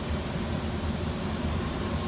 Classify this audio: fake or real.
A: fake